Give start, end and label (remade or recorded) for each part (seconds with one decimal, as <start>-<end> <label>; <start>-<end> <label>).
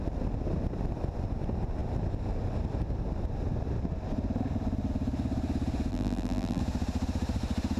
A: 0.0-5.9 recorded; 5.9-6.6 remade; 6.6-7.8 recorded